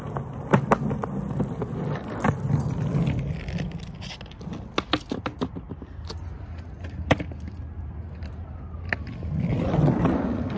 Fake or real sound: real